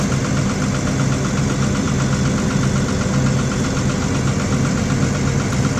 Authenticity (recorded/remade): recorded